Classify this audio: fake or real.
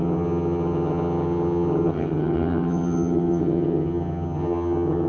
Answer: fake